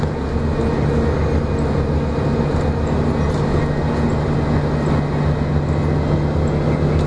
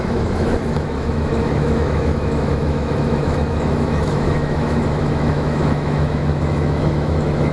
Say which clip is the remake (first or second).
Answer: second